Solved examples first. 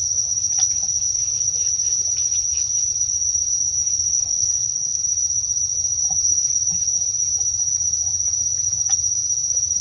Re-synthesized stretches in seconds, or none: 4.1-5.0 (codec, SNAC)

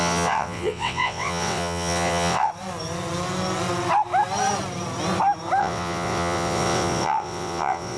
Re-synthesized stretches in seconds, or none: 0.0-2.5 (vocoder, WaveNeXt); 5.6-8.0

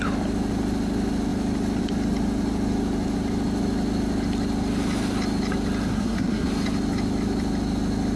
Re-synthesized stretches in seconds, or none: 5.9-6.5 (codec, SNAC)

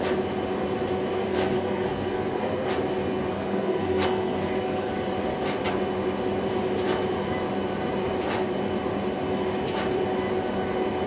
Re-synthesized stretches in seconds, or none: 1.1-2.7 (codec, SNAC); 3.3-4.9

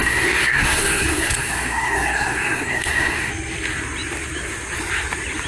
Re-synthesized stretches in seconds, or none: 0.0-3.3 (codec, SNAC)